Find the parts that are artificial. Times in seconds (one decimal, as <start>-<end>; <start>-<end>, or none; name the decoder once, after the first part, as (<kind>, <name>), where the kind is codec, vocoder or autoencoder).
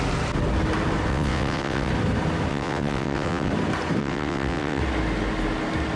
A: 1.1-1.9 (vocoder, WaveNeXt); 2.5-3.5; 4.0-4.8